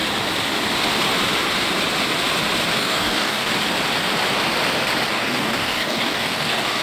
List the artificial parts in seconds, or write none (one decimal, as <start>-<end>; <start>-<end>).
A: 2.8-3.5; 5.1-6.8